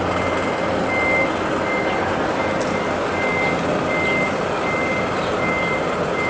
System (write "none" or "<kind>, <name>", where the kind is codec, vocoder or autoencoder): none